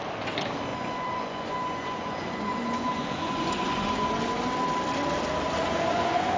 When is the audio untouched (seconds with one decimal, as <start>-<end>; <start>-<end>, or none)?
0.0-0.7; 4.1-5.7